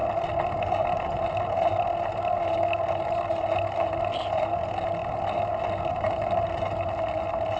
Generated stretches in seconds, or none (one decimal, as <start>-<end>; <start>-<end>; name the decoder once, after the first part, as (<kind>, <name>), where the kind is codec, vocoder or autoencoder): 5.9-6.9 (vocoder, BigVGAN v2)